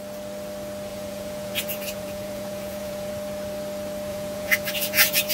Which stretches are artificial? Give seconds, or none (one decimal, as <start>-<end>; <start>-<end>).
0.9-3.1; 4.1-5.3

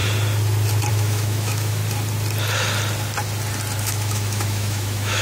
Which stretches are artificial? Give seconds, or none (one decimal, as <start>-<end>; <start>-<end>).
0.9-1.8; 3.8-5.2

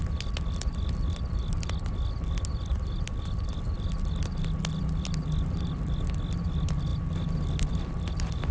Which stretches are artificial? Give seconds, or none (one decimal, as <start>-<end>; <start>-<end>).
2.7-3.9

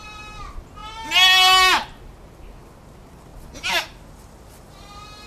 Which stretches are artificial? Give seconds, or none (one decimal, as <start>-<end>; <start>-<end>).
none

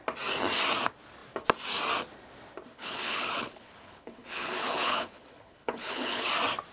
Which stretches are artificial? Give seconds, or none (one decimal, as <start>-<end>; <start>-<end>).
2.7-6.3